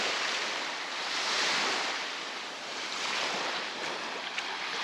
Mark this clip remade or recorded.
remade